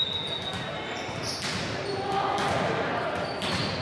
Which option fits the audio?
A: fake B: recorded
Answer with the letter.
B